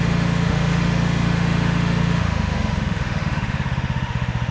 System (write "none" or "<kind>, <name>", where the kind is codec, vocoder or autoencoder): autoencoder, DAC-VAE